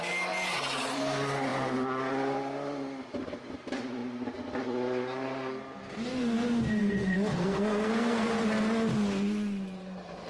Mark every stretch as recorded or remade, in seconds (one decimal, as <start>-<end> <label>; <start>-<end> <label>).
0.0-6.8 recorded; 6.8-8.3 remade; 8.3-10.3 recorded